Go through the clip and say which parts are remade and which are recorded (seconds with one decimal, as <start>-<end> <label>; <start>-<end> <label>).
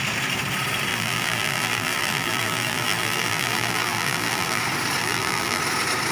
0.0-0.9 recorded; 0.9-4.6 remade; 4.6-5.0 recorded; 5.0-5.6 remade; 5.6-6.1 recorded